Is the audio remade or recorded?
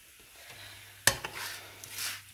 recorded